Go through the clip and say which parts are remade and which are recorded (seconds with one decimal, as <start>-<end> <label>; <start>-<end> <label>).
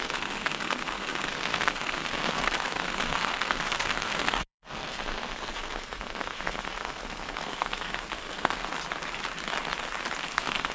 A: 0.0-8.7 remade; 8.7-10.2 recorded; 10.2-10.7 remade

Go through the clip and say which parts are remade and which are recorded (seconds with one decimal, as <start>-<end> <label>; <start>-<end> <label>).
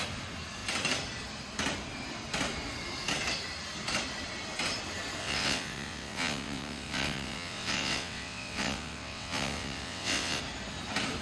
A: 0.0-5.2 recorded; 5.2-10.4 remade; 10.4-11.2 recorded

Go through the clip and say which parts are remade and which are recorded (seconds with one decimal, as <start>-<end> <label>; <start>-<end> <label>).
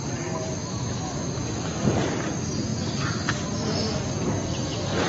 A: 0.0-0.6 recorded; 0.6-1.4 remade; 1.4-5.1 recorded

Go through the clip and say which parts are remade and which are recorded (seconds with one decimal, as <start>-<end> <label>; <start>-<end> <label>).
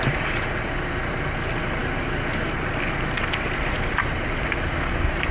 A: 0.0-5.3 recorded